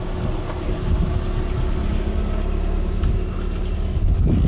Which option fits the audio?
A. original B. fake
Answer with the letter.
A